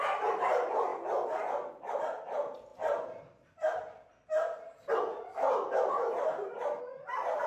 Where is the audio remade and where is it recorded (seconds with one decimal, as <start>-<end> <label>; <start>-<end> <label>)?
0.0-7.5 recorded